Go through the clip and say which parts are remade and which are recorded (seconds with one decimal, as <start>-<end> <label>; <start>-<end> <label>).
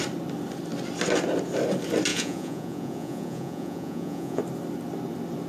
0.0-2.1 recorded; 2.1-4.4 remade; 4.4-5.5 recorded